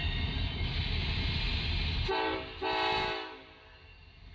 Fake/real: real